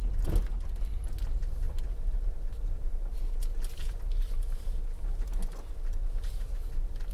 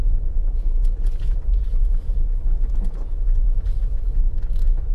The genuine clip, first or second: first